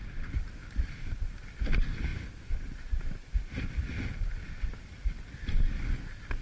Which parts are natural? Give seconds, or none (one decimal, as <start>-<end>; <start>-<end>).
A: 0.0-6.4